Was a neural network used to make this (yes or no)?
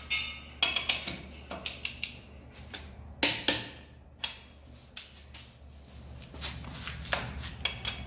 no